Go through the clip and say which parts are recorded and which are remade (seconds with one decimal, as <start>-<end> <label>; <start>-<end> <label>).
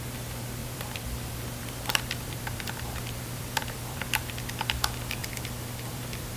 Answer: 0.0-0.6 recorded; 0.6-4.4 remade; 4.4-5.2 recorded; 5.2-6.4 remade